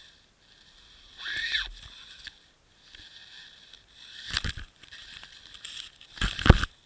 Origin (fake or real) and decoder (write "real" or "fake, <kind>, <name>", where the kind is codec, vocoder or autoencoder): real